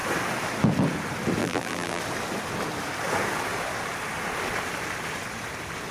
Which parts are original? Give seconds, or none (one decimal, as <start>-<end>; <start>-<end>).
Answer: 0.0-1.4; 2.0-5.9